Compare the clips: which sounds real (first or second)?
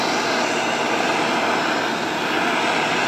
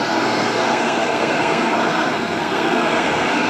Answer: first